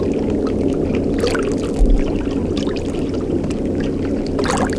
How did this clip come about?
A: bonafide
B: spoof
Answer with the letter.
A